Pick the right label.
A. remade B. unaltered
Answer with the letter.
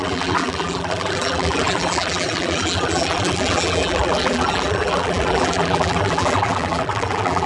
A